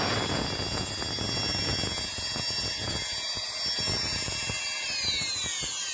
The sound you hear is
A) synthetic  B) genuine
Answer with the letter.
B